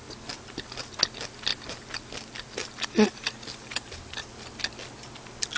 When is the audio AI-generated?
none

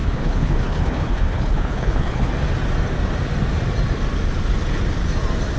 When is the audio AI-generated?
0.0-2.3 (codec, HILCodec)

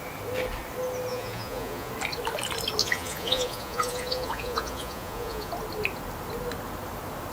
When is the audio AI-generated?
1.1-1.9 (vocoder, Vocos); 2.8-5.5

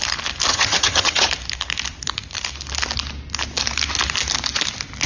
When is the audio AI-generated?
0.5-1.3 (vocoder, HiFi-GAN)

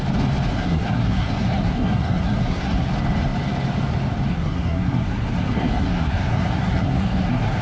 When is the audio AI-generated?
0.5-2.9 (codec, SNAC); 4.3-7.6

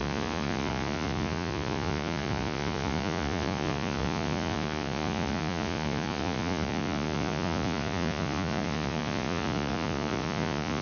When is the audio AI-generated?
0.0-10.8 (vocoder, Vocos)

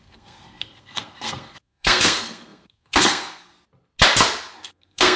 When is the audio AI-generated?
0.0-3.5 (codec, SNAC); 4.6-5.2

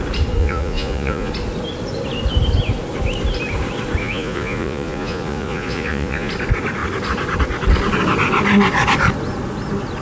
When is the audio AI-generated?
0.4-1.3 (vocoder, Vocos); 4.0-6.3